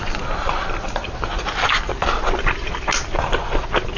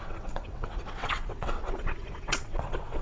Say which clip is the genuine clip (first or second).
first